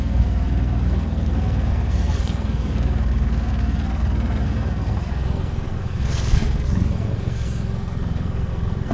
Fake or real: fake